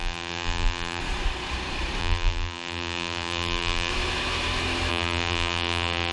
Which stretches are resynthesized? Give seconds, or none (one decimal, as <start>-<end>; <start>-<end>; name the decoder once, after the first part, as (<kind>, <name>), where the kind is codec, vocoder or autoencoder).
0.0-1.0 (vocoder, BigVGAN v2); 2.0-3.9; 4.9-6.1